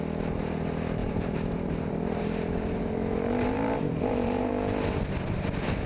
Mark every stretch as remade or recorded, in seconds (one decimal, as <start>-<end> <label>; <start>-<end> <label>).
0.0-1.0 recorded; 1.0-4.5 remade; 4.5-5.9 recorded